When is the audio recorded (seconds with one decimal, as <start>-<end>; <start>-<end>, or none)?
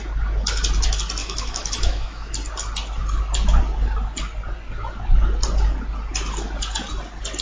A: 0.0-1.2; 2.3-7.4